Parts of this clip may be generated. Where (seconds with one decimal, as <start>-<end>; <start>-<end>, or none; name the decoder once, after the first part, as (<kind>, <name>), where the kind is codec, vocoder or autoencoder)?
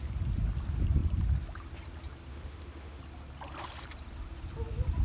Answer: 2.3-3.0 (autoencoder, DAC-VAE)